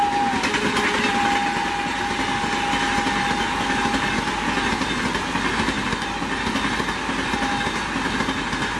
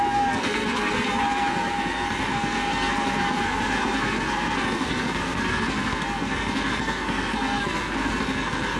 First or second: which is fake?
second